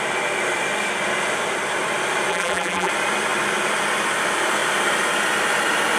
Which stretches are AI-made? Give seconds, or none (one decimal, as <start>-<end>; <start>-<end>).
2.3-2.9